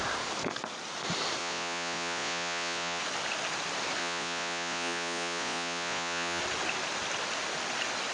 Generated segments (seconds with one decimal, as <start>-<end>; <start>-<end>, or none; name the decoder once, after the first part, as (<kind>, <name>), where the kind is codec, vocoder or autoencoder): 1.4-3.0 (vocoder, Vocos); 4.0-6.4